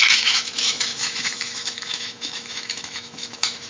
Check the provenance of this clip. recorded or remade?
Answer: remade